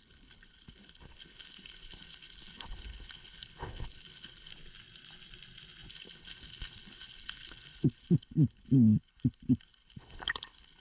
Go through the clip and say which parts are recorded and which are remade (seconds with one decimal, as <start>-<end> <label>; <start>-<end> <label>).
0.0-4.5 remade; 4.5-5.9 recorded; 5.9-10.8 remade